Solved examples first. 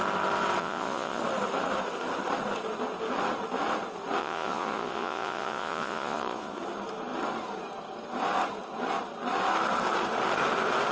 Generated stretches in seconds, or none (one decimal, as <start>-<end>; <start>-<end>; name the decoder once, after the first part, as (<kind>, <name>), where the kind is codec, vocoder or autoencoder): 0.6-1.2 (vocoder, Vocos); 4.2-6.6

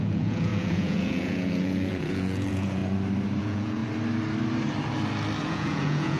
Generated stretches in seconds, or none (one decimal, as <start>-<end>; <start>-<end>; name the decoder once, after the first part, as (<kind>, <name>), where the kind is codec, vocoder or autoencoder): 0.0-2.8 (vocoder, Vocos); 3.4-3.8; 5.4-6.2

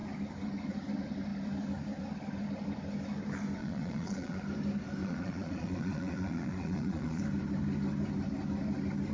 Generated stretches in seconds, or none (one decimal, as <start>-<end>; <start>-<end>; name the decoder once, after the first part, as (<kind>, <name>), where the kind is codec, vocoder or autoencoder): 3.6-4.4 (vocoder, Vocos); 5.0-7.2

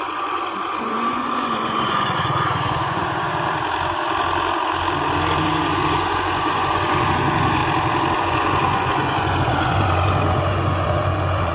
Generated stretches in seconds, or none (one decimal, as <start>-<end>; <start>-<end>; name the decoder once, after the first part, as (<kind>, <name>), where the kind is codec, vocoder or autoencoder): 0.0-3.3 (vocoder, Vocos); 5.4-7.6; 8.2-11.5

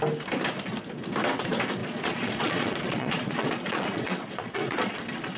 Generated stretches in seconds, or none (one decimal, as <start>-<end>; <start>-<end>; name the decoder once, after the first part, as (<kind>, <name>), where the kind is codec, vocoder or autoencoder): 1.8-5.0 (vocoder, Vocos)